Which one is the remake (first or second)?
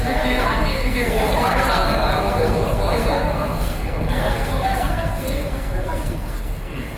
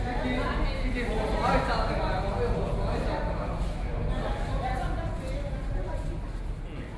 first